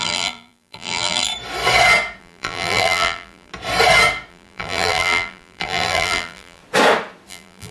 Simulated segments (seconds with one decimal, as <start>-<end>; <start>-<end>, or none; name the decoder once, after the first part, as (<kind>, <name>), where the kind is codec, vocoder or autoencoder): 0.0-1.3 (vocoder, BigVGAN v2); 2.2-3.5; 4.3-6.6; 7.3-7.7